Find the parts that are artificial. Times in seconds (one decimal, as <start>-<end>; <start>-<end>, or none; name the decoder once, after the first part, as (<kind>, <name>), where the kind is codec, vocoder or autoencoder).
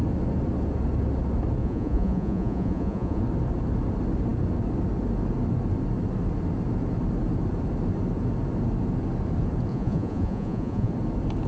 1.6-3.2 (vocoder, Vocos); 9.7-10.9